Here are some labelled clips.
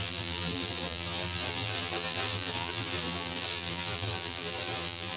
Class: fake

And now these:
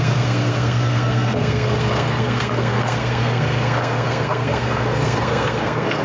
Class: fake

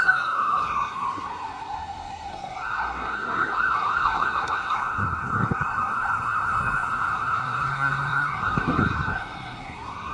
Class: fake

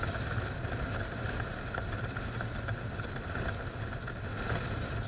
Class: real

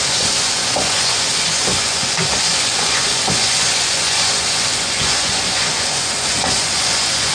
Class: fake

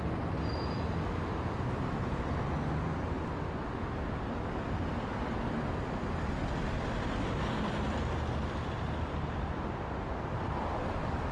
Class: real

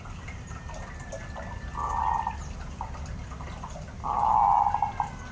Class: real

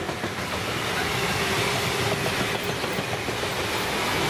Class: real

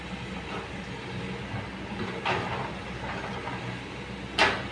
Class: real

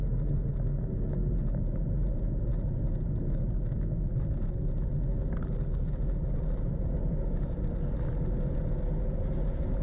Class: real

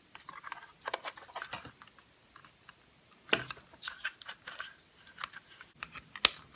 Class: real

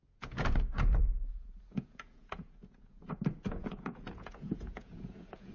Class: fake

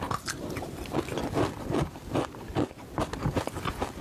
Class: real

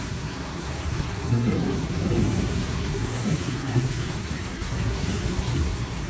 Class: fake